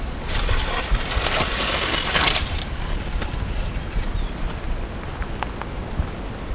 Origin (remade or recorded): recorded